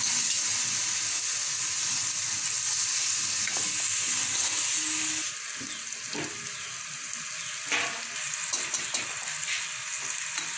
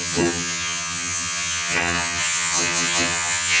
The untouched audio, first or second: first